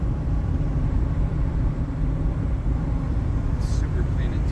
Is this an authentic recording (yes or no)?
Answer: no